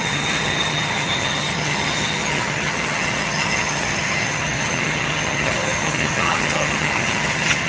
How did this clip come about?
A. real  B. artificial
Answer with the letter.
B